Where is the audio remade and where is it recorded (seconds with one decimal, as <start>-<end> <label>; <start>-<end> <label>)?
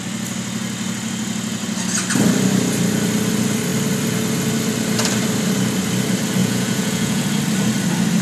0.0-6.4 recorded; 6.4-7.2 remade; 7.2-8.2 recorded